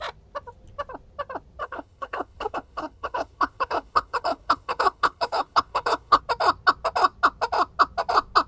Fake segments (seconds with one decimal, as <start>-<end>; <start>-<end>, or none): 1.6-6.2